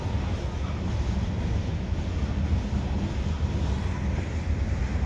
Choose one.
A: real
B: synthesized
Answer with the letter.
A